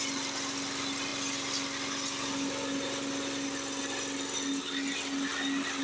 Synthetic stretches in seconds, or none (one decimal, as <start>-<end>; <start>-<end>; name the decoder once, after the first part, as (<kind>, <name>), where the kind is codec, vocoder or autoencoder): none